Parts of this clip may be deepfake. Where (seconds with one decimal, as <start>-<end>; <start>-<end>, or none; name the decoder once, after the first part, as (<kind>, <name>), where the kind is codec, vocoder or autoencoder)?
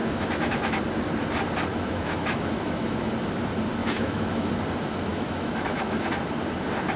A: 0.0-0.8 (autoencoder, DAC-VAE); 1.7-3.1; 3.8-4.5; 5.1-6.1